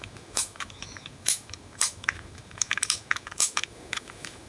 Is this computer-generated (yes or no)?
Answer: yes